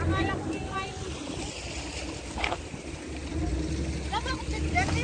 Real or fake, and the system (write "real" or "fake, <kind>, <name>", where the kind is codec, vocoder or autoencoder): real